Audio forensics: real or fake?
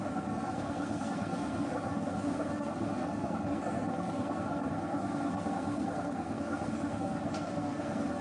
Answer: fake